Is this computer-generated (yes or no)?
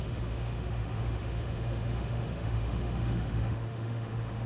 yes